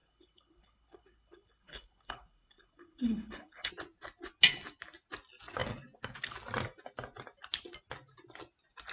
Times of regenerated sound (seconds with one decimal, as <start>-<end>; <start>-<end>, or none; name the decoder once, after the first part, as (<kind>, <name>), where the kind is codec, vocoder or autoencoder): 0.0-3.7 (codec, HILCodec)